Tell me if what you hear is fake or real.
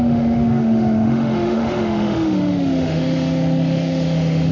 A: fake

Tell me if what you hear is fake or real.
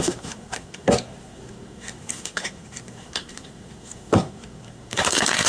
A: fake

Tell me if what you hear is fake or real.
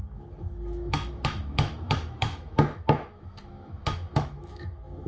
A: fake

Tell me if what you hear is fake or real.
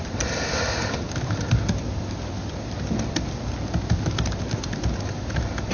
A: fake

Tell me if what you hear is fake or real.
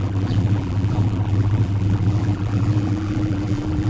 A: fake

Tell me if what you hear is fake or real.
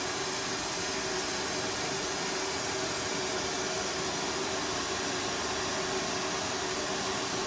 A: real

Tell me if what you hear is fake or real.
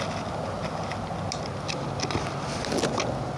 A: real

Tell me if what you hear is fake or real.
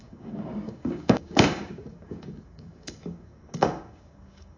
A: fake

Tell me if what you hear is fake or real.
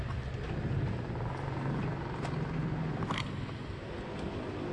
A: real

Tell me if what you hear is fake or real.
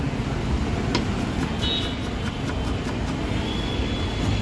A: real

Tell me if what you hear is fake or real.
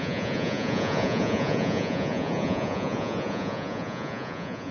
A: fake